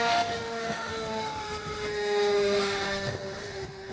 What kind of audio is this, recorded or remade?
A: remade